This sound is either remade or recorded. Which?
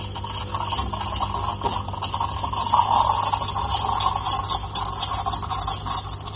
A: recorded